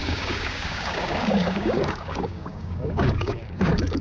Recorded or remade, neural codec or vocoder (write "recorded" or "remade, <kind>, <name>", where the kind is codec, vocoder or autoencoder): remade, codec, DAC